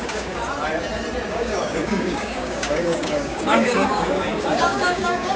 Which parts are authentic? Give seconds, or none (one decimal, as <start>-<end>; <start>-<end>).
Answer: 0.4-1.3